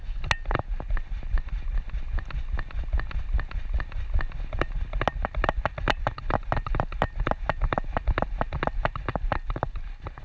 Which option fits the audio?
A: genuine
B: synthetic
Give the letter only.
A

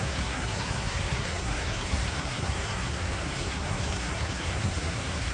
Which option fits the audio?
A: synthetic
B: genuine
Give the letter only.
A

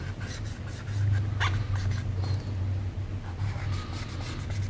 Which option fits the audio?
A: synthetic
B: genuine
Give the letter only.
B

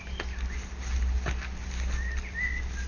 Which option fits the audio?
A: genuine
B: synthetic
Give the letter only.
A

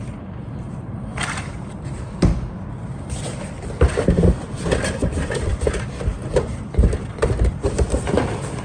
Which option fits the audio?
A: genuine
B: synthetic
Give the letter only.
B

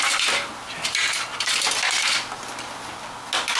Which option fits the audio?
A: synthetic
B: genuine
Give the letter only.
B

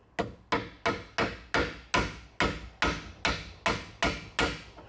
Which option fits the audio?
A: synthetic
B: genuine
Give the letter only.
B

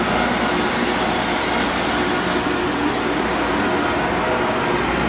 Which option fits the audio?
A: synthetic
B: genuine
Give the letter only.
B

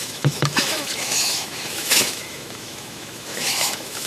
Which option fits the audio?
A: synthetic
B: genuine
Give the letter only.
A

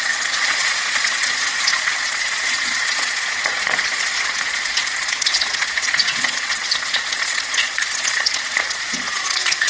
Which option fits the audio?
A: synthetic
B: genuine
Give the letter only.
A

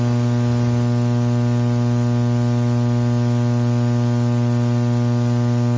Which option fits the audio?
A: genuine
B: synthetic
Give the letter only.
A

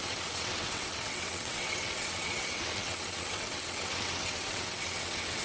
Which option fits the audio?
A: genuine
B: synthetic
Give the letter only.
B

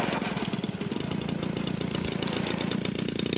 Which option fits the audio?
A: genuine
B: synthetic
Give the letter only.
A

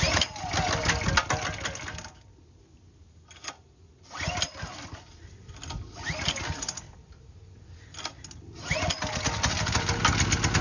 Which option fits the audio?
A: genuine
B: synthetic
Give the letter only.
A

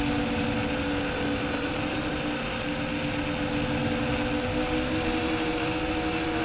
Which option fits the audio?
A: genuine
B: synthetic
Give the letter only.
A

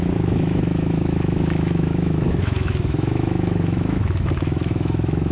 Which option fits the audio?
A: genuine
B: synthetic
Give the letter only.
B